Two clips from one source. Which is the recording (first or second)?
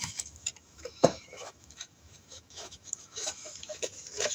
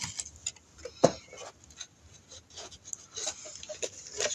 second